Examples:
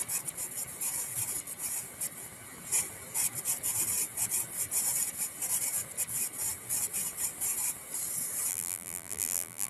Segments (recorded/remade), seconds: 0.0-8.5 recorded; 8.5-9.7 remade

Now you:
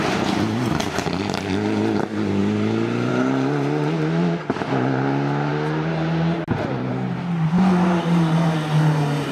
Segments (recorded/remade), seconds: 0.0-9.3 recorded

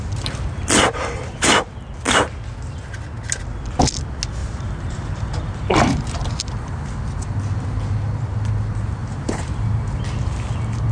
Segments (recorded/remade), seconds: 0.0-4.4 recorded; 4.4-5.2 remade; 5.2-9.0 recorded; 9.0-10.0 remade; 10.0-10.9 recorded

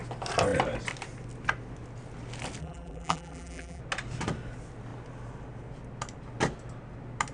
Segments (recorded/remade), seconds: 0.0-2.6 recorded; 2.6-3.8 remade; 3.8-7.3 recorded

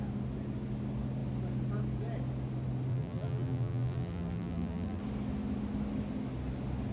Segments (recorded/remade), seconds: 0.0-2.9 recorded; 2.9-5.0 remade; 5.0-6.9 recorded